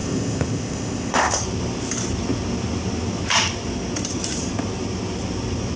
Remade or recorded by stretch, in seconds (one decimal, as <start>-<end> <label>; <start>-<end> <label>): 0.0-1.4 remade; 1.4-5.8 recorded